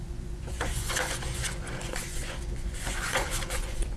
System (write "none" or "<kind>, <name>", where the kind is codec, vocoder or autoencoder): vocoder, Vocos